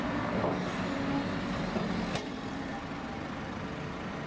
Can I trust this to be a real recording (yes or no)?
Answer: yes